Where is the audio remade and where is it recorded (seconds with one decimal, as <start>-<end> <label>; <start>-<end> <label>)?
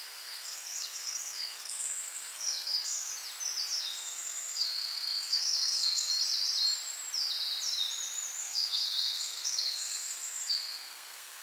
0.0-3.1 remade; 3.1-3.8 recorded; 3.8-6.1 remade; 6.1-8.4 recorded; 8.4-11.4 remade